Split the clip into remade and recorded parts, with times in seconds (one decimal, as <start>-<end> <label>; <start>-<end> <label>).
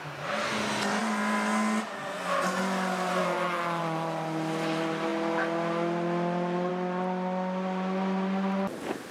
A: 0.0-9.1 recorded